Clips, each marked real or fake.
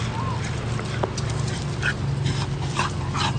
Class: real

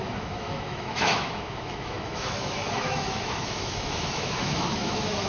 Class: fake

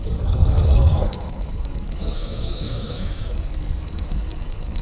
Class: fake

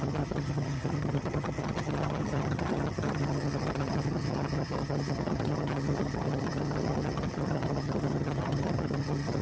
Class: fake